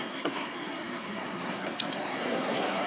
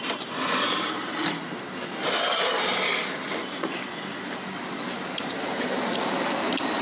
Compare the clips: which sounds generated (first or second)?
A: first